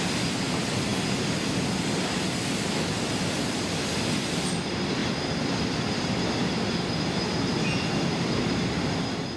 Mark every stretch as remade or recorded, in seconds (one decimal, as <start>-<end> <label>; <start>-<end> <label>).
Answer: 0.0-9.4 recorded